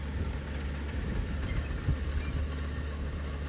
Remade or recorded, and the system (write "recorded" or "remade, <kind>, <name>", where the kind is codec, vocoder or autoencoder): recorded